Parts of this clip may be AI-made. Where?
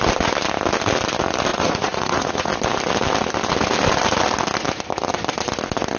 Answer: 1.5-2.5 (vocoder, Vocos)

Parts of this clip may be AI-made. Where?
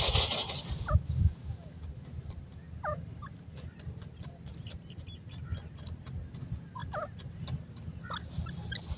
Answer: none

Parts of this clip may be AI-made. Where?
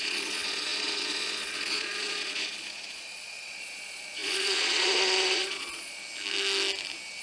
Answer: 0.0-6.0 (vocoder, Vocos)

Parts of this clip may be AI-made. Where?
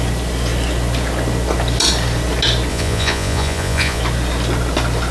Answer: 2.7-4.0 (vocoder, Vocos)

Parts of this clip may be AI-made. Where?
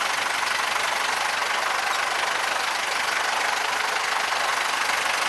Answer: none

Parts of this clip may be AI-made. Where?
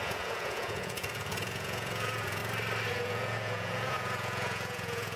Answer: 0.0-2.4 (vocoder, Vocos); 2.9-5.2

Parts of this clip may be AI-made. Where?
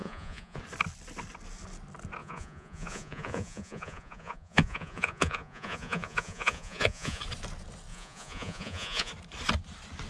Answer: 0.0-0.6 (vocoder, Vocos); 2.2-7.2; 7.9-9.1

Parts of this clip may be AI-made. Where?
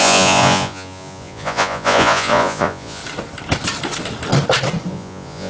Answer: 0.0-3.0 (vocoder, Vocos); 4.9-5.5